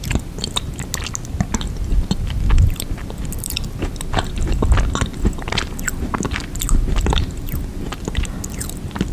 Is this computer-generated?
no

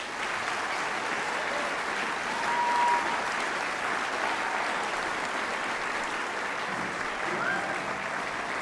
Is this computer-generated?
no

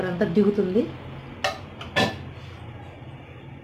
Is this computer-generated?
no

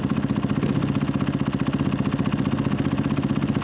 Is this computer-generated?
no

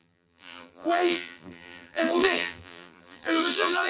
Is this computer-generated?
yes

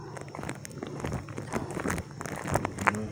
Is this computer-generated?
no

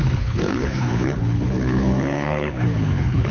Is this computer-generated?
yes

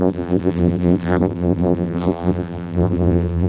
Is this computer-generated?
yes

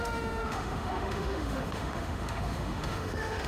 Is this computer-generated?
yes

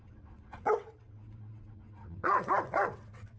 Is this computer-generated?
yes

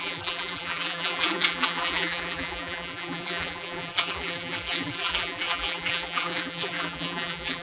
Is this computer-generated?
yes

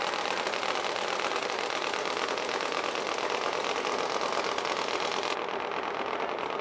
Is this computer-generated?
no